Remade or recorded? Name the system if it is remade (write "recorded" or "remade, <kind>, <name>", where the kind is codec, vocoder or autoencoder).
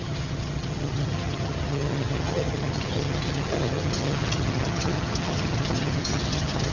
remade, vocoder, HiFi-GAN